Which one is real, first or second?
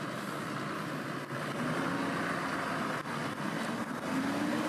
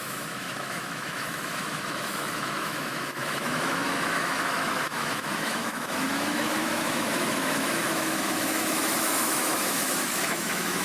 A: first